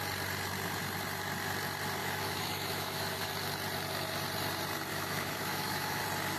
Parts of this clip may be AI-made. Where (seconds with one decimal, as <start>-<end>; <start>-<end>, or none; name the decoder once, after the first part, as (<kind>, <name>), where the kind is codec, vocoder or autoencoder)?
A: 2.0-3.3 (autoencoder, DAC-VAE); 4.9-6.0

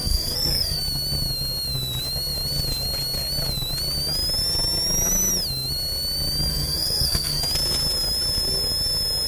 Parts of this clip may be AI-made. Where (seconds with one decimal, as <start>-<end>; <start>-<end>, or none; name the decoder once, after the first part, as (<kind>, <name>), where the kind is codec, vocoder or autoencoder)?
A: 0.0-0.8 (codec, SNAC); 6.5-7.4

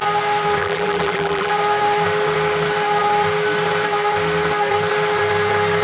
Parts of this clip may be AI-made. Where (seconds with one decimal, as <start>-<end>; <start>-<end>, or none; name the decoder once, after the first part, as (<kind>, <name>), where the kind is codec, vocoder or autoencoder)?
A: 0.6-1.5 (vocoder, BigVGAN v2)

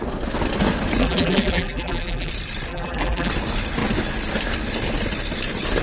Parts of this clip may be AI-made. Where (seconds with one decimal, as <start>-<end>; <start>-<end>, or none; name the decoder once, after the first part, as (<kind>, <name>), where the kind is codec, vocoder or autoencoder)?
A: 1.0-2.3 (vocoder, BigVGAN v2); 2.7-3.3